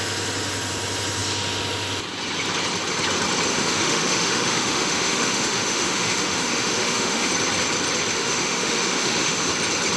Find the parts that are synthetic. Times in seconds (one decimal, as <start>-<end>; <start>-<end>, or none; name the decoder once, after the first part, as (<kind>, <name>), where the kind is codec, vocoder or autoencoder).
3.5-7.3 (autoencoder, DAC-VAE); 8.1-9.5